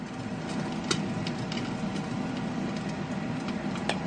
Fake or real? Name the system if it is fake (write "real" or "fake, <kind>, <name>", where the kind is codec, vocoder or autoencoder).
real